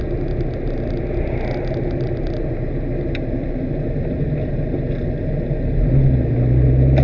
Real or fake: real